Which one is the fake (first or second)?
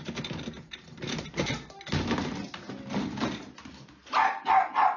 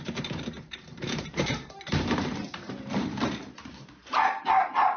second